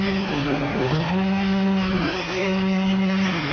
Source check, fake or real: fake